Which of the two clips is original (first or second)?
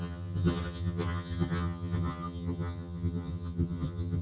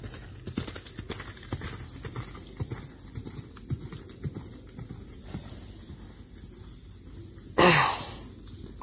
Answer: second